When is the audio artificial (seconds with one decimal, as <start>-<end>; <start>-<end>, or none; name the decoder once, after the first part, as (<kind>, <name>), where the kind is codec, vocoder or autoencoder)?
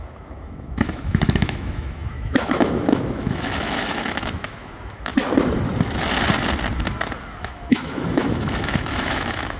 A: 0.0-5.1 (autoencoder, DAC-VAE); 7.4-9.6